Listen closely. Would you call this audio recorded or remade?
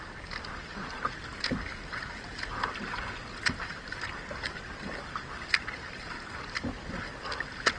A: recorded